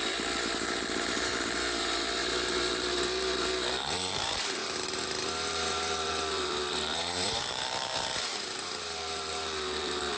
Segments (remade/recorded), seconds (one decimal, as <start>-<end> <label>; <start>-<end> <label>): 0.0-4.6 remade; 4.6-5.5 recorded; 5.5-10.2 remade